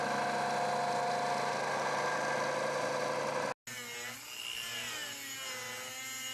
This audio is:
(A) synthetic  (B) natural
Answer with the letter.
B